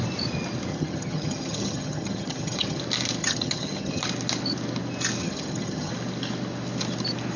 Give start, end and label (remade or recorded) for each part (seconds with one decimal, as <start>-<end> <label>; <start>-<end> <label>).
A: 0.0-0.7 recorded; 0.7-2.8 remade; 2.8-3.2 recorded; 3.2-4.0 remade; 4.0-5.2 recorded; 5.2-5.9 remade; 5.9-7.4 recorded